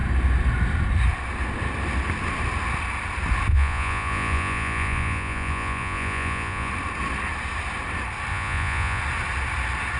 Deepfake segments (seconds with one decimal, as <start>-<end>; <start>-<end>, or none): 3.5-6.7; 8.3-9.0